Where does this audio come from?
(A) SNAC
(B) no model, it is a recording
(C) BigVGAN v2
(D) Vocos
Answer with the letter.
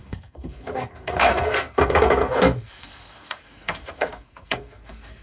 A